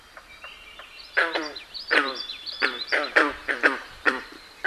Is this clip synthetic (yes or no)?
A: yes